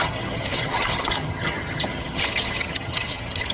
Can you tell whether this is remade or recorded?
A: remade